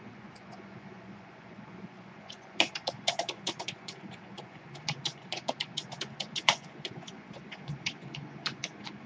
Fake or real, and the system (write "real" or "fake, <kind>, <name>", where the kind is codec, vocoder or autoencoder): fake, vocoder, Vocos